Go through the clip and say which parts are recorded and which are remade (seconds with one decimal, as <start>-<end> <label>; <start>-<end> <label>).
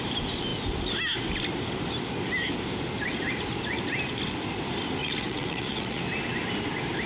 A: 0.0-5.0 recorded; 5.0-6.0 remade; 6.0-7.1 recorded